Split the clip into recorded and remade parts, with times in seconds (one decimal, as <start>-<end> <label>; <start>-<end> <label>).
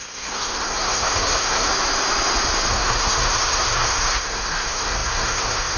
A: 0.0-1.7 remade; 1.7-2.7 recorded; 2.7-5.8 remade